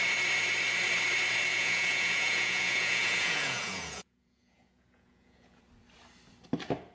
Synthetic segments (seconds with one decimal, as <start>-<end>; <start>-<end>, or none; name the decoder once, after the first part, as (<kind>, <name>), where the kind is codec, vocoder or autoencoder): 1.5-5.6 (vocoder, Vocos)